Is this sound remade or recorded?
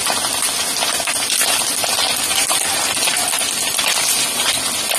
recorded